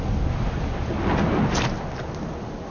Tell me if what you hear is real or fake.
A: real